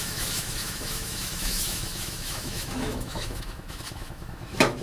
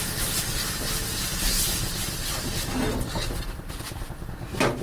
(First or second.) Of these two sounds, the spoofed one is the first